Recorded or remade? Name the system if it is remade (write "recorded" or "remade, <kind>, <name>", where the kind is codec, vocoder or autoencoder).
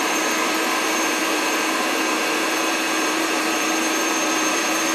remade, vocoder, BigVGAN v2